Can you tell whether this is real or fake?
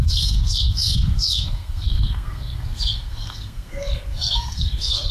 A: fake